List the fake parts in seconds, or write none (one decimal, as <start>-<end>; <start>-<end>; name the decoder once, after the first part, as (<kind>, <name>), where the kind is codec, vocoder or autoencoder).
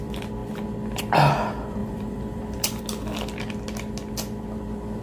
1.8-2.8 (vocoder, BigVGAN v2)